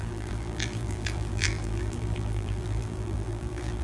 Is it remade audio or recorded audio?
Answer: remade